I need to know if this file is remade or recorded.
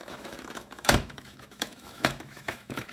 remade